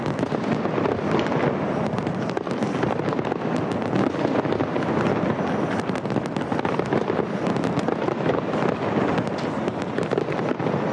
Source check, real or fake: real